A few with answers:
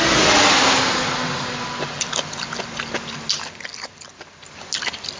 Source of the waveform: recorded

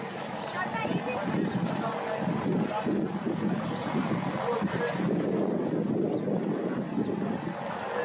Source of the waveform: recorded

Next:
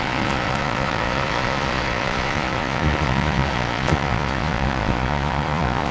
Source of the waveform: remade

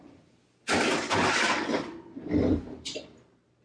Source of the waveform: recorded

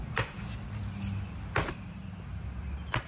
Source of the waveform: recorded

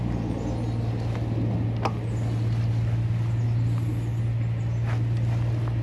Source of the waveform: recorded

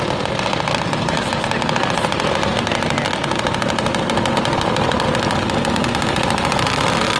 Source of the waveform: recorded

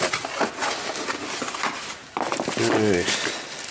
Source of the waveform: recorded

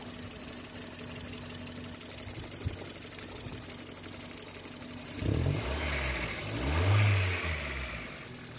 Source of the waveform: recorded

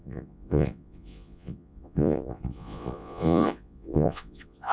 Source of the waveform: remade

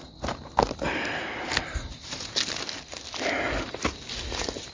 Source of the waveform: recorded